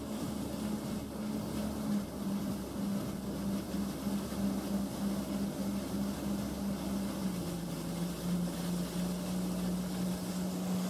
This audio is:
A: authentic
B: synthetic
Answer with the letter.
A